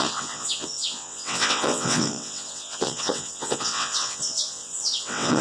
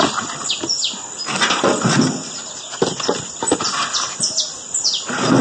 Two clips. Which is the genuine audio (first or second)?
second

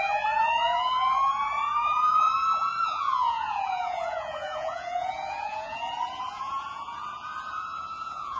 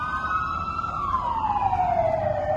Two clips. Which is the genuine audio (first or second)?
second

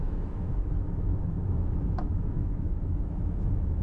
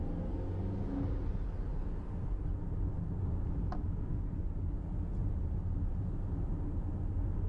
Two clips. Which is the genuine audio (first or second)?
second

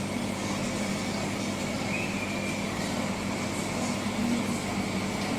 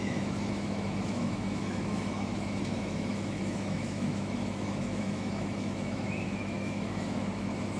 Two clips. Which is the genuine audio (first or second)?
first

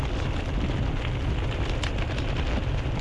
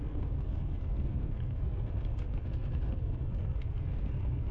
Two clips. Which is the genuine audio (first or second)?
first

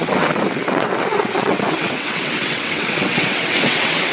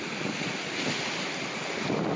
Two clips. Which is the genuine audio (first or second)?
second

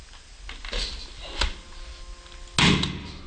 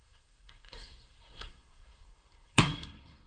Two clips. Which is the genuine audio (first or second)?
first